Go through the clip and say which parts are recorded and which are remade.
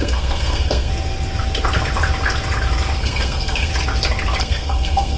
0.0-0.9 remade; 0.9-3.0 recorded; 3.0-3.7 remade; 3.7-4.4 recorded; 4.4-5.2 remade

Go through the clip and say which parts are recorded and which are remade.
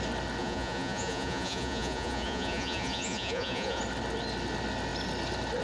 0.0-0.4 recorded; 0.4-3.8 remade; 3.8-5.6 recorded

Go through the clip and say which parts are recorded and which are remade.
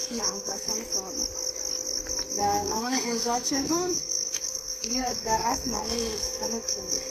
0.0-0.7 remade; 0.7-2.4 recorded; 2.4-7.1 remade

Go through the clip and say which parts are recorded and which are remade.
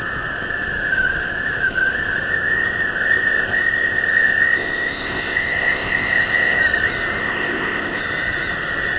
0.0-2.3 recorded; 2.3-6.6 remade; 6.6-7.2 recorded; 7.2-8.0 remade; 8.0-9.0 recorded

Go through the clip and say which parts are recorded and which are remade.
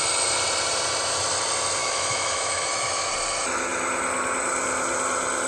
0.0-1.8 recorded; 1.8-3.1 remade; 3.1-5.5 recorded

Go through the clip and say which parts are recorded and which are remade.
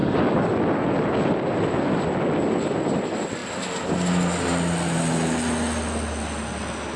0.0-7.0 recorded